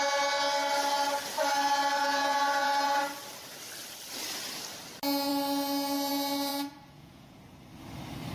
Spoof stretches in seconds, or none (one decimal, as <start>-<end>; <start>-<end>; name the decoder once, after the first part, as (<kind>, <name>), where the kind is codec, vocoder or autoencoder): 2.0-3.0 (vocoder, Vocos); 6.5-7.4